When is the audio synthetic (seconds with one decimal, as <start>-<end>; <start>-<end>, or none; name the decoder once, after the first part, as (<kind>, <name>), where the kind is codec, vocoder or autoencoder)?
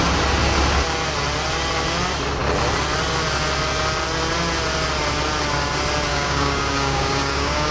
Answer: 6.1-7.7 (codec, DAC)